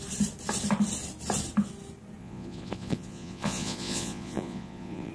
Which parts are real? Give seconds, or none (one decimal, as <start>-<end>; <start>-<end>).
0.0-2.2